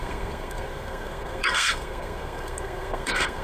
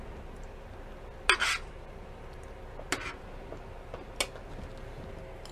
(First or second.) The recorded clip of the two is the second